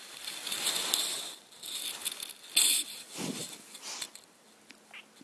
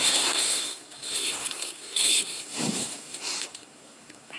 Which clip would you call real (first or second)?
first